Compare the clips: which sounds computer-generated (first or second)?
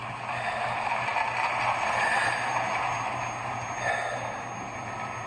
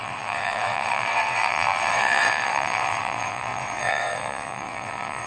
second